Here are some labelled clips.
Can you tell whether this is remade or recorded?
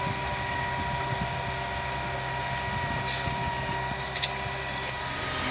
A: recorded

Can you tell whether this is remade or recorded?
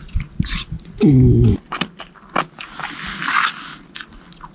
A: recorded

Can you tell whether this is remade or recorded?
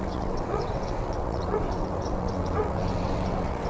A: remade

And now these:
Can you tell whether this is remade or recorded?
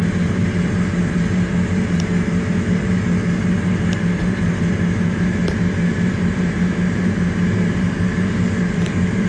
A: remade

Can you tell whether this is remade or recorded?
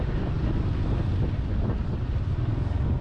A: recorded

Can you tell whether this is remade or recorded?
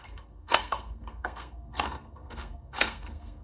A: remade